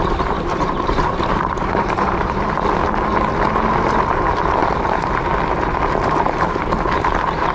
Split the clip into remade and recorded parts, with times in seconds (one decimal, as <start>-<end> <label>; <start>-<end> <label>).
0.0-2.5 remade; 2.5-7.5 recorded